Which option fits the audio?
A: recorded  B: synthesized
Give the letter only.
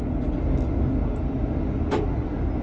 A